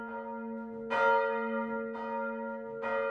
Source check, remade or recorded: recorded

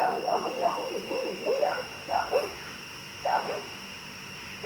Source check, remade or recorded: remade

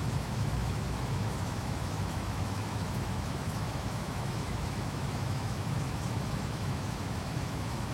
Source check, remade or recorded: remade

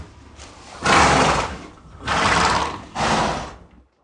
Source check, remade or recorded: recorded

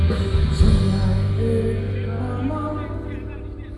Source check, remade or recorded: recorded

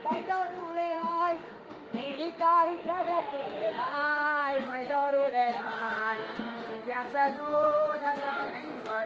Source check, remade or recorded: remade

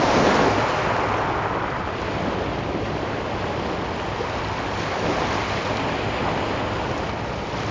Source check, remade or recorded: recorded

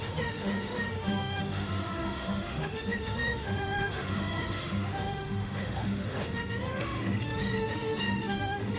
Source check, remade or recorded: remade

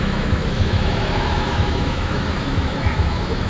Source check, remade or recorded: remade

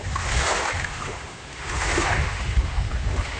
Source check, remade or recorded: remade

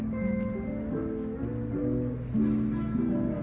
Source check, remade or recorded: recorded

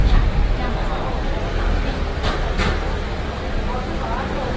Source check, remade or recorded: recorded